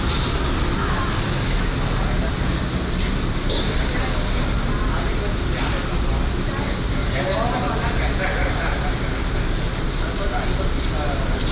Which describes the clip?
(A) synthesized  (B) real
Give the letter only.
B